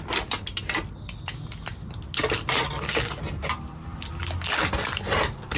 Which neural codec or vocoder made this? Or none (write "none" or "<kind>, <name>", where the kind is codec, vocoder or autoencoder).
none